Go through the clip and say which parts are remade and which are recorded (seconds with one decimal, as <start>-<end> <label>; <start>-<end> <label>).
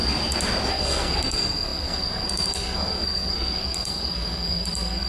0.0-0.7 recorded; 0.7-5.1 remade